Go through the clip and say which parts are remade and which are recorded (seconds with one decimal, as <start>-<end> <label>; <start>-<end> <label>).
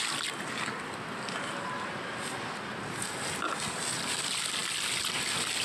0.0-5.6 recorded